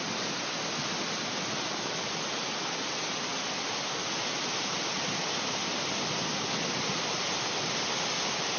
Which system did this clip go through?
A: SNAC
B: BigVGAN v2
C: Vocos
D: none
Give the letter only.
D